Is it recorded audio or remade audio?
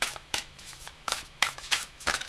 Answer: remade